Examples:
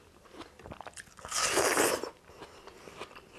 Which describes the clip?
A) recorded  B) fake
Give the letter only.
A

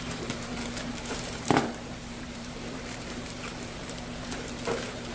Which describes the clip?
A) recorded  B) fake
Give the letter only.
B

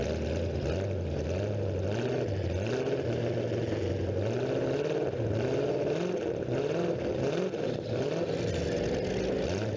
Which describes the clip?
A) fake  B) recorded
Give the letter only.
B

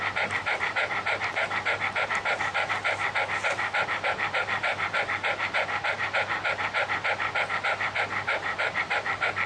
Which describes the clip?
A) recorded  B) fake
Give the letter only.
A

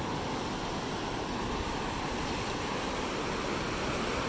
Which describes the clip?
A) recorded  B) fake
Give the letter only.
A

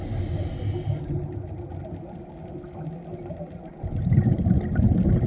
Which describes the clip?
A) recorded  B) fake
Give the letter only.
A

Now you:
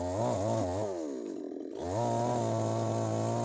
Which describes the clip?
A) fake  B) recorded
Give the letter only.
B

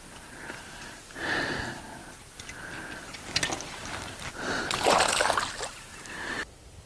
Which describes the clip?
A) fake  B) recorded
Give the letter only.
B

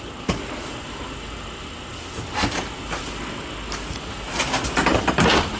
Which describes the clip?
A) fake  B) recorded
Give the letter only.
B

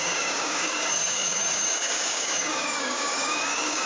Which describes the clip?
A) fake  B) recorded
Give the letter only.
A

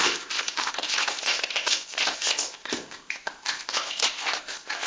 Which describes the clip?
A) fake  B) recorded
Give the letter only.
A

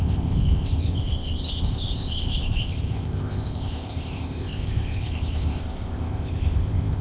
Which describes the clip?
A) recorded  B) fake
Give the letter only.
B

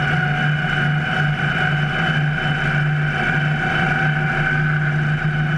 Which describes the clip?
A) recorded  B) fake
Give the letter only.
A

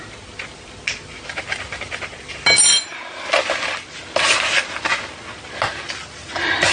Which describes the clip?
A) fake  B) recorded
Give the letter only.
B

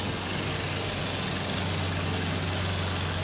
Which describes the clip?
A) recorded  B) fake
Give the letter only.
A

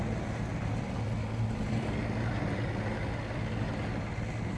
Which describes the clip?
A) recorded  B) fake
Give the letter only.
A